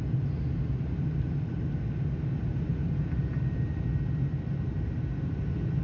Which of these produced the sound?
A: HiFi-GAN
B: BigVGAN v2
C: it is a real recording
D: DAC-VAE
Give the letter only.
C